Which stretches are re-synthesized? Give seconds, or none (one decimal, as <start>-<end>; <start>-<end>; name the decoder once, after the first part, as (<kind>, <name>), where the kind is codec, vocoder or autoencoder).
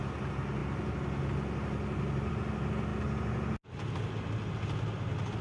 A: none